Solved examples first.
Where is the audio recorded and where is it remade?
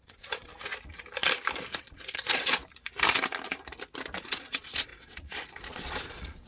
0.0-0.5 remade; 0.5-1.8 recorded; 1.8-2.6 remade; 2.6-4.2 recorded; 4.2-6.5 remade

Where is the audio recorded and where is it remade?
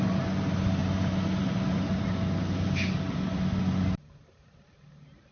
0.0-5.3 recorded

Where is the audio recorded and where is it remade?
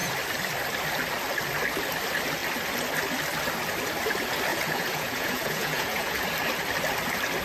0.0-4.5 recorded; 4.5-6.2 remade; 6.2-7.4 recorded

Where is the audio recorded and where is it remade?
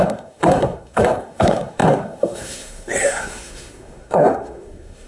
0.0-5.1 remade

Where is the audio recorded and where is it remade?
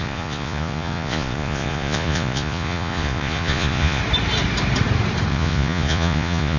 0.0-4.0 remade; 4.0-5.3 recorded; 5.3-6.6 remade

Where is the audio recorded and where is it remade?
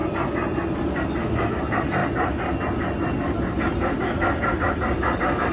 0.0-5.5 recorded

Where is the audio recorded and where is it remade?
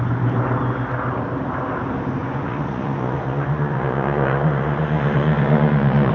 0.0-2.2 recorded; 2.2-6.1 remade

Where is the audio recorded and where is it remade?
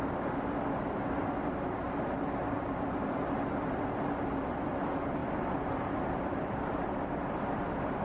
0.0-8.0 recorded